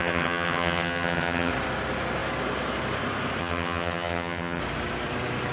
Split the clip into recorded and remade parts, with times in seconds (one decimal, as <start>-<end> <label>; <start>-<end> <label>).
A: 0.0-1.5 remade; 1.5-3.4 recorded; 3.4-4.6 remade; 4.6-5.5 recorded